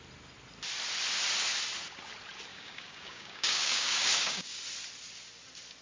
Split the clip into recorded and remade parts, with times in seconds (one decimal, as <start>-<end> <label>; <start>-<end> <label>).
0.0-2.5 recorded; 2.5-4.6 remade; 4.6-5.8 recorded